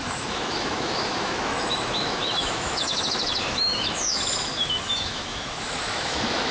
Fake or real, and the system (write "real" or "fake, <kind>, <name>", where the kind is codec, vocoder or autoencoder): fake, autoencoder, DAC-VAE